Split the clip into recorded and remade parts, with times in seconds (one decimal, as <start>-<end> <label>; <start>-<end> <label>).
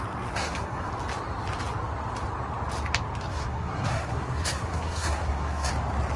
0.0-0.4 recorded; 0.4-0.9 remade; 0.9-3.3 recorded; 3.3-5.7 remade; 5.7-6.2 recorded